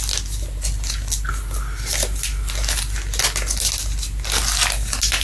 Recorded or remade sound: recorded